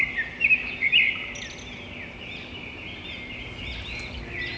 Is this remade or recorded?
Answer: recorded